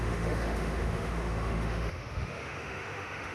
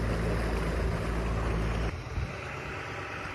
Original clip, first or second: second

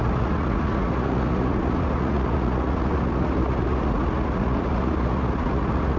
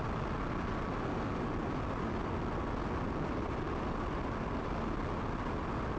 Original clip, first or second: second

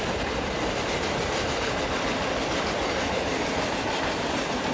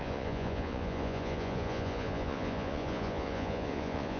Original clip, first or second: first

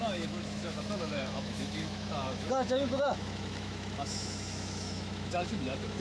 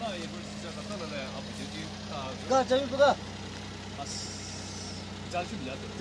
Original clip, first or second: second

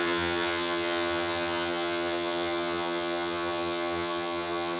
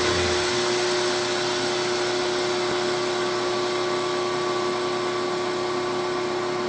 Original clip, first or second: second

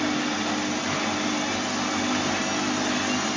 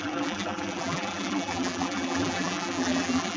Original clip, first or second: first